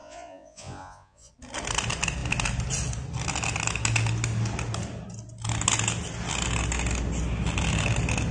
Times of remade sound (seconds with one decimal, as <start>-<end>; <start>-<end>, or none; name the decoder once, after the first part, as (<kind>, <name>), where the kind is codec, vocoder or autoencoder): 0.0-1.3 (vocoder, Vocos)